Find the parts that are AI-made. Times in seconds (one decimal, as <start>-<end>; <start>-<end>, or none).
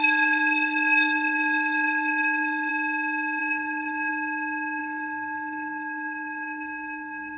0.0-2.7; 3.4-4.1; 4.8-7.4